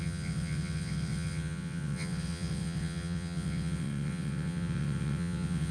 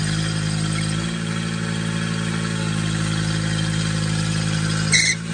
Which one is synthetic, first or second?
first